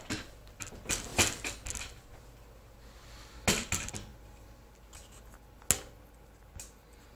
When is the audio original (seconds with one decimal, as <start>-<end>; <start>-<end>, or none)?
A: 0.0-7.2